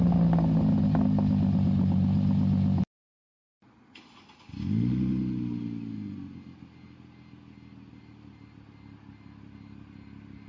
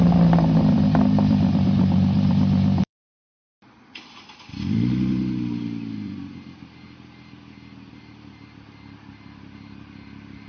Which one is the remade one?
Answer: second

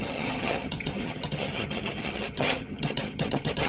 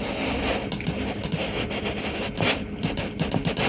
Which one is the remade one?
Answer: first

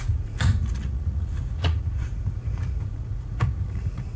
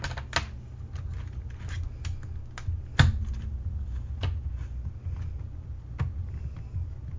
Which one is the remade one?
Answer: first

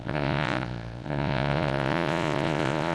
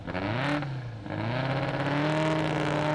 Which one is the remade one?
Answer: first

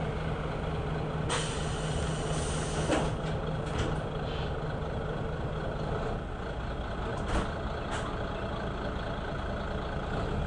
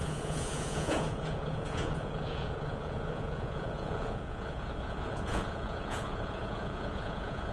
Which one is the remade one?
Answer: second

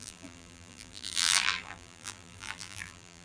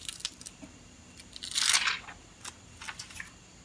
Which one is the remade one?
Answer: first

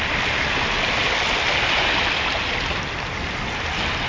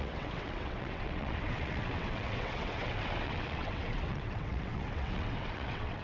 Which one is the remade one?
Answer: second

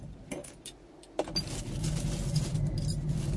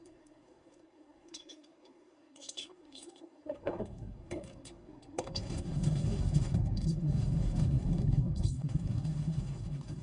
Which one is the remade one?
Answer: second